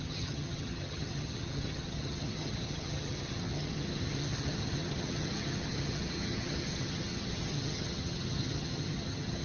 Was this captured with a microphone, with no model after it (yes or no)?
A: no